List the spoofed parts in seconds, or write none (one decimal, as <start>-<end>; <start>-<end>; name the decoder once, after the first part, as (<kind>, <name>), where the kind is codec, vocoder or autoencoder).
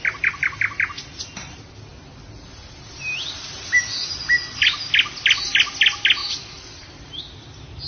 6.2-7.2 (vocoder, BigVGAN v2)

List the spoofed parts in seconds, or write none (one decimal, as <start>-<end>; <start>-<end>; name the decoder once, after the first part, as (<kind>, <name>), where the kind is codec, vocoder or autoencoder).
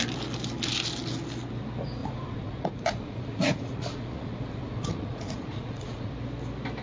2.0-6.1 (vocoder, Vocos)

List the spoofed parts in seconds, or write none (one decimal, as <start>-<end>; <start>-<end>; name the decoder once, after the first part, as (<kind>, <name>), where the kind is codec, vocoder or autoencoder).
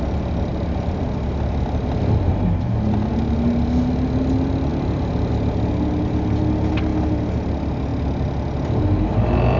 none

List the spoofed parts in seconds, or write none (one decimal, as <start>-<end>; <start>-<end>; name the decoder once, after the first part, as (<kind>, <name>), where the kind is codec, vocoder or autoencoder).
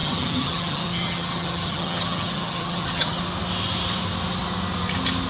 0.0-3.2 (vocoder, HiFi-GAN)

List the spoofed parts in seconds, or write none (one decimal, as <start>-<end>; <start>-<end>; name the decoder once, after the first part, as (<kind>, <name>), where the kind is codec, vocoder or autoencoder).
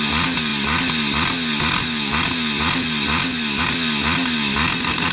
none